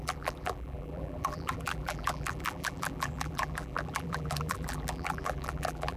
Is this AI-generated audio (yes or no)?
yes